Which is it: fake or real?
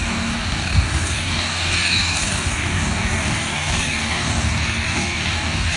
fake